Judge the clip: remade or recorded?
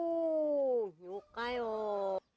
recorded